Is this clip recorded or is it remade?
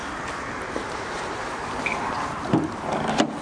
recorded